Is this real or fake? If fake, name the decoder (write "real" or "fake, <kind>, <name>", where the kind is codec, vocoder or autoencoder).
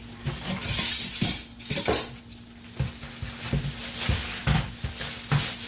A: real